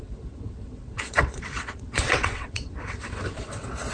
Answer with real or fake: fake